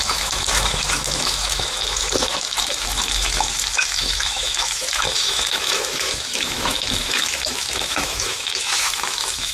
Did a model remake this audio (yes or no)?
yes